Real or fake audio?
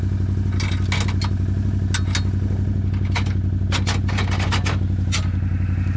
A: real